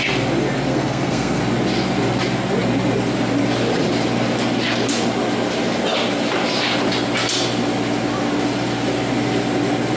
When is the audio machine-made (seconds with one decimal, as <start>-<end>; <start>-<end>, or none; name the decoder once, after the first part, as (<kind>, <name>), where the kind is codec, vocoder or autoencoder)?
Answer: 0.7-1.4 (codec, SNAC)